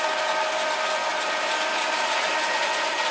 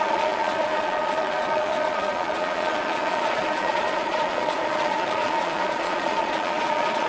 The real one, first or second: first